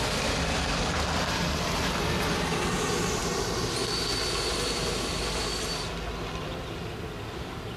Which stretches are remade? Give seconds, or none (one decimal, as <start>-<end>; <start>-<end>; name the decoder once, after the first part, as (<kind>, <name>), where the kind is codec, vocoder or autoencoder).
none